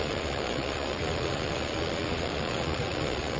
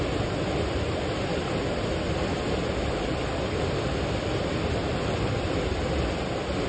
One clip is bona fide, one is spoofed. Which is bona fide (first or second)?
second